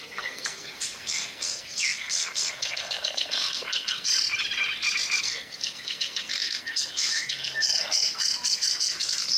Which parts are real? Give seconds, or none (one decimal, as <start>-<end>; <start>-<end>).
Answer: 4.1-5.2